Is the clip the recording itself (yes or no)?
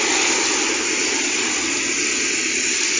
yes